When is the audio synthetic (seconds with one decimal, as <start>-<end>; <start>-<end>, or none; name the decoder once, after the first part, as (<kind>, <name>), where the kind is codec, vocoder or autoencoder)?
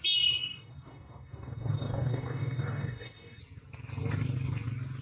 0.4-3.4 (codec, DAC)